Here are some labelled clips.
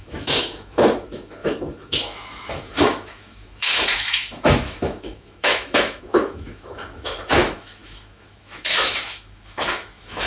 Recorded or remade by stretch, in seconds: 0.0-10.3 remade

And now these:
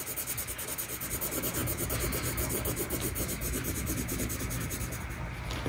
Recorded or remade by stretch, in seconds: 0.0-5.7 recorded